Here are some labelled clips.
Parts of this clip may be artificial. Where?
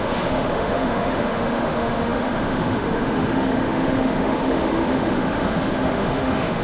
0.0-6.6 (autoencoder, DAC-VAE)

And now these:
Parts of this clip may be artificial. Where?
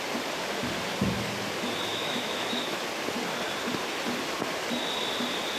1.9-2.8 (autoencoder, DAC-VAE)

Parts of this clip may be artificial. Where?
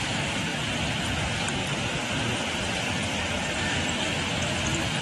none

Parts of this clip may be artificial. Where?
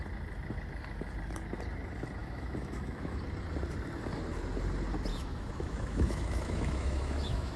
2.2-3.2 (autoencoder, DAC-VAE); 5.1-7.6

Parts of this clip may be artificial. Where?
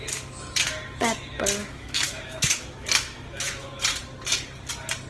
1.6-3.7 (autoencoder, DAC-VAE)